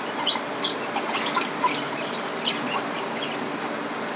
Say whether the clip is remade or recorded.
recorded